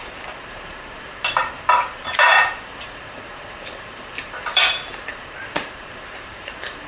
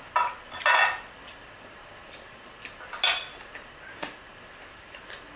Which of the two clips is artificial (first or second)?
first